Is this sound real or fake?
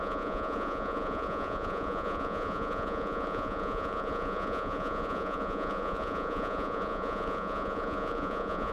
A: fake